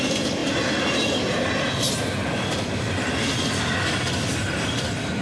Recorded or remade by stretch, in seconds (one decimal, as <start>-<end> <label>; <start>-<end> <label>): 0.0-5.2 recorded